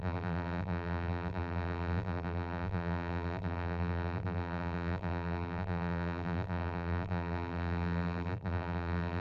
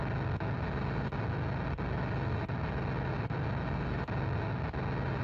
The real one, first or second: second